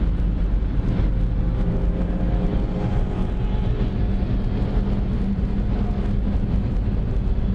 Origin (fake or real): real